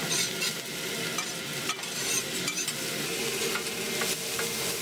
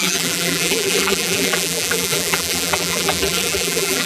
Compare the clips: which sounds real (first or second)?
first